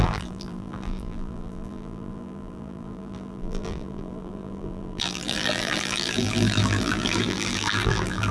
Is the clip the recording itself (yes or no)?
no